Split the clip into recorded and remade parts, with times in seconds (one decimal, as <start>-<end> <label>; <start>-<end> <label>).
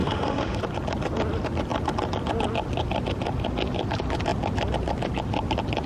0.0-0.6 remade; 0.6-5.9 recorded